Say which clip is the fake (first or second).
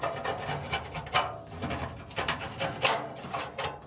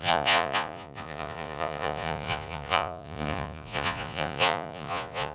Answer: second